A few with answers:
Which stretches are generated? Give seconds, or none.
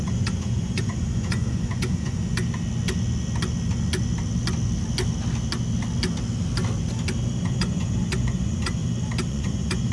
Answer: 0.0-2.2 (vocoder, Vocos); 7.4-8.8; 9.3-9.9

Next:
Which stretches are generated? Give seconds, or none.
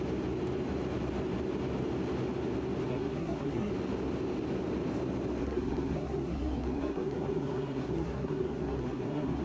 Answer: 2.9-3.7 (codec, SNAC); 5.4-9.4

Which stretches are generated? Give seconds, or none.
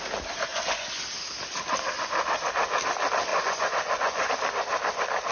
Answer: 0.5-1.0 (vocoder, Vocos); 3.3-4.3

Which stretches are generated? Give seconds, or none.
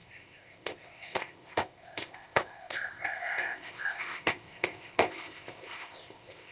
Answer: 0.0-6.5 (codec, ZipCodec)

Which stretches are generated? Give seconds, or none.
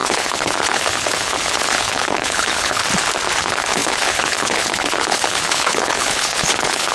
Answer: 0.0-2.8 (codec, HILCodec); 3.4-6.9